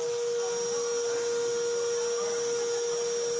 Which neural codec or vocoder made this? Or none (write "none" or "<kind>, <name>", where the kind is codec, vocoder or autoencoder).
none